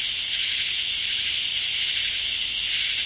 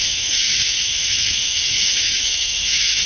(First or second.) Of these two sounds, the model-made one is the second